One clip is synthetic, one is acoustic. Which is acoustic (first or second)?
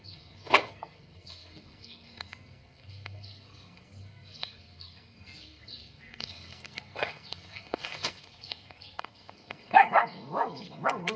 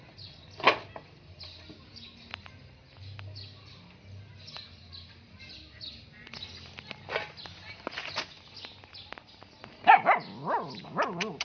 second